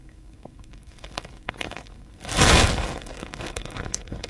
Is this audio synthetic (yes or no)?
yes